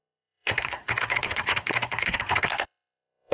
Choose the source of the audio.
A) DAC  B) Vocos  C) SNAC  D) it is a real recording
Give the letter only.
C